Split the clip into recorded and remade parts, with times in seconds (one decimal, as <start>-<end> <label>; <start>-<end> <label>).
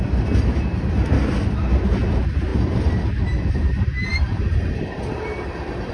0.0-4.1 recorded; 4.1-5.9 remade